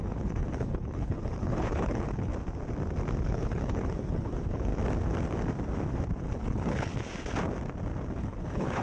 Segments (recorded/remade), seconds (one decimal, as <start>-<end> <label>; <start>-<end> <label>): 0.0-2.3 remade; 2.3-3.2 recorded; 3.2-4.7 remade; 4.7-6.2 recorded; 6.2-6.9 remade; 6.9-8.2 recorded; 8.2-8.8 remade